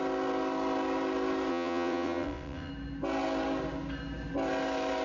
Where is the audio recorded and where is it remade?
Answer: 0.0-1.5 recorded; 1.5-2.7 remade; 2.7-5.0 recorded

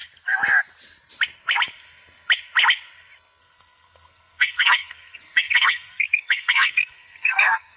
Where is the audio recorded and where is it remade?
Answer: 0.0-3.4 recorded; 3.4-7.8 remade

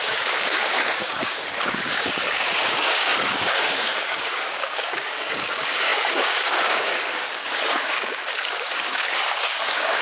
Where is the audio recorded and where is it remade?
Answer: 0.0-10.0 remade

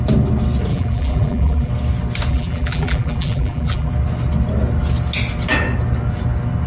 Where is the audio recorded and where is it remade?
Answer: 0.0-0.7 recorded; 0.7-1.7 remade; 1.7-2.3 recorded; 2.3-3.9 remade; 3.9-6.7 recorded

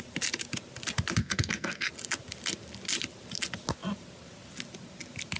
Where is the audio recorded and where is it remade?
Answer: 0.0-1.2 recorded; 1.2-1.9 remade; 1.9-5.4 recorded

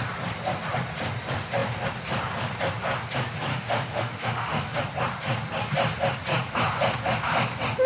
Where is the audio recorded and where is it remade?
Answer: 0.0-3.5 recorded; 3.5-4.8 remade; 4.8-7.9 recorded

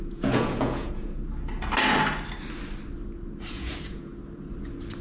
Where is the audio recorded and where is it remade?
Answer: 0.0-1.2 remade; 1.2-3.5 recorded; 3.5-4.1 remade; 4.1-5.0 recorded